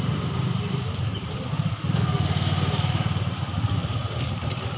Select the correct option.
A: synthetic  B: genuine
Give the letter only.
B